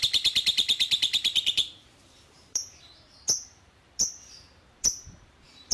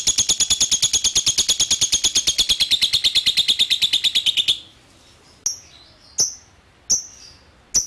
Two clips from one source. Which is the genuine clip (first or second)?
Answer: second